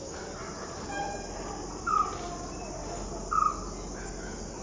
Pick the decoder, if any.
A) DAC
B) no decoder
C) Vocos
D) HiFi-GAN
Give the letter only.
B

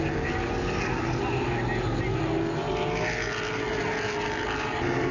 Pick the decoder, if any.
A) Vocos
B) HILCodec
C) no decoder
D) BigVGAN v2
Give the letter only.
C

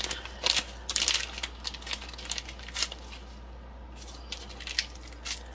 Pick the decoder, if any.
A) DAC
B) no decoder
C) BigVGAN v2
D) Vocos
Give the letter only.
B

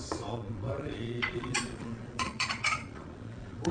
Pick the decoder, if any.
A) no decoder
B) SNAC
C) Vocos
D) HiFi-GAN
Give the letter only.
C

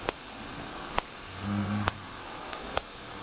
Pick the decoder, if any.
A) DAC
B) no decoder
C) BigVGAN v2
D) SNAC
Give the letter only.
D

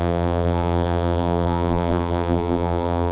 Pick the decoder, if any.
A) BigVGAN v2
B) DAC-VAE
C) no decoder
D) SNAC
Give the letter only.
A